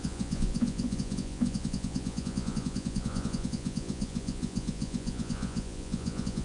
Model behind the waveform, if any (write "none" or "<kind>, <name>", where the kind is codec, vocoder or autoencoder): vocoder, Vocos